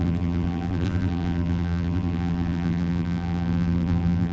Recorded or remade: remade